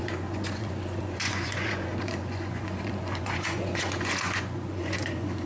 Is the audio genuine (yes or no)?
no